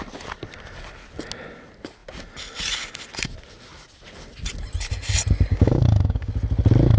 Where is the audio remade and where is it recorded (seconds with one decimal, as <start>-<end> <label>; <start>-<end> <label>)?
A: 0.0-5.5 recorded; 5.5-6.3 remade; 6.3-7.0 recorded